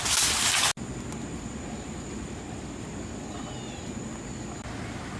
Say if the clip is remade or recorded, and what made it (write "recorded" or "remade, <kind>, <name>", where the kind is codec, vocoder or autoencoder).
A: recorded